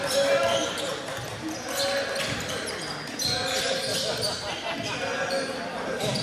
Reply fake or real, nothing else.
real